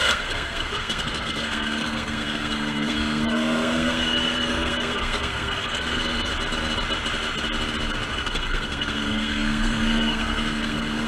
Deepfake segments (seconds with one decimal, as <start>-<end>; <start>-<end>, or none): 0.0-6.3; 8.1-11.1